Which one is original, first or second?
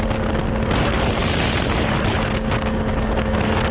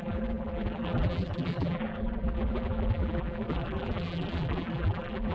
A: first